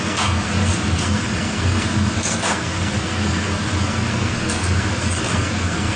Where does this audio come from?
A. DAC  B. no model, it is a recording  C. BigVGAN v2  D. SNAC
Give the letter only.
D